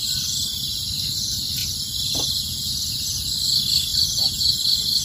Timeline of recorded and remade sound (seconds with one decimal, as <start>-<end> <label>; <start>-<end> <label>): 0.0-5.0 recorded